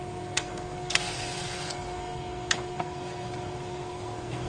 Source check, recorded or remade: remade